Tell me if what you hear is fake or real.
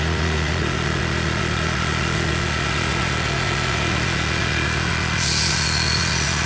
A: fake